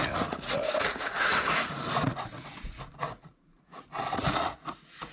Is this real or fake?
fake